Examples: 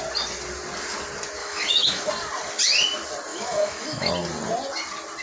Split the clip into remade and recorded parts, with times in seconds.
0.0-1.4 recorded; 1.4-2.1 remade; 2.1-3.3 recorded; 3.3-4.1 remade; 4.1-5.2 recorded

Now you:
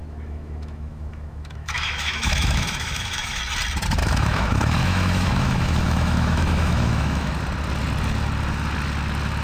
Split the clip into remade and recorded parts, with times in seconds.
0.0-3.4 remade; 3.4-4.0 recorded; 4.0-7.3 remade; 7.3-9.4 recorded